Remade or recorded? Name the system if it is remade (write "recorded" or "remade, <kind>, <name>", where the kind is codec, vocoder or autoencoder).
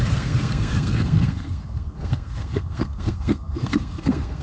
remade, codec, SNAC